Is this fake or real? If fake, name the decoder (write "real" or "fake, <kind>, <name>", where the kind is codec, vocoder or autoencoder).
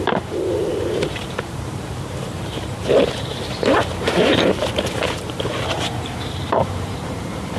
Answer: fake, vocoder, BigVGAN v2